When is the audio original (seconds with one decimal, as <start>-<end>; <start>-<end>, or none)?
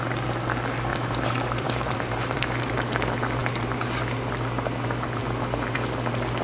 0.0-0.9; 2.7-6.4